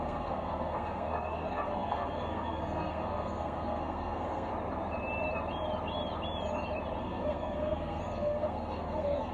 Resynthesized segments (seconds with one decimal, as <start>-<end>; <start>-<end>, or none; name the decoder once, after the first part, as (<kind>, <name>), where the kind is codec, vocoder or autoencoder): 0.0-4.5 (codec, SNAC); 7.0-9.3